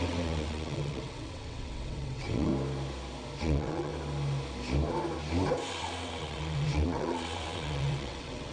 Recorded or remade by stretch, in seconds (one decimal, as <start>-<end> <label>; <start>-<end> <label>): 0.0-2.5 remade; 2.5-3.4 recorded; 3.4-3.9 remade; 3.9-5.7 recorded; 5.7-8.5 remade